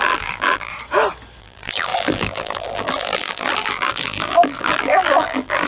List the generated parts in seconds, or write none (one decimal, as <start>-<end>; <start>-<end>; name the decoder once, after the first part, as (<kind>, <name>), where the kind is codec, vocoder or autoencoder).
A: 0.0-0.7 (vocoder, BigVGAN v2); 1.4-5.7